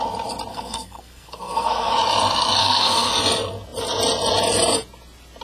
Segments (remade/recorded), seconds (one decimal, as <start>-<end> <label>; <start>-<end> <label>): 0.0-0.5 recorded; 0.5-1.9 remade; 1.9-2.6 recorded; 2.6-3.1 remade; 3.1-5.4 recorded